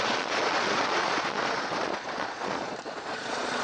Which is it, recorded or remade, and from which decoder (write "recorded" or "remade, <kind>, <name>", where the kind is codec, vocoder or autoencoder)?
remade, vocoder, Vocos